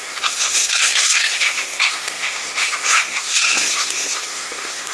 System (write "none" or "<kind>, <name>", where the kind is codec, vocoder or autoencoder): codec, SNAC